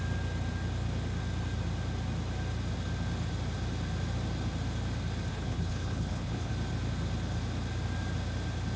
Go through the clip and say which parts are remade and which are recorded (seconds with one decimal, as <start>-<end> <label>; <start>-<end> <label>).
0.0-5.3 recorded; 5.3-6.5 remade; 6.5-8.8 recorded